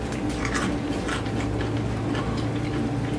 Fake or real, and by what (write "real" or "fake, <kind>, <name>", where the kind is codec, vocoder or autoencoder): real